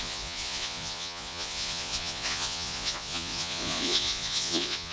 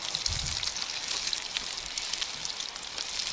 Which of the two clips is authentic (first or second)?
second